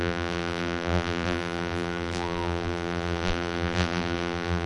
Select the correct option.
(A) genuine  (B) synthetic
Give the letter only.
B